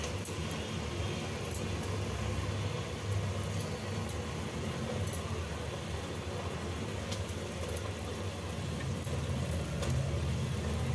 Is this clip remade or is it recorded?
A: recorded